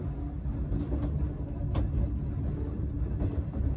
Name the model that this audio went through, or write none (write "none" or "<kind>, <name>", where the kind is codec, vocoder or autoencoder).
none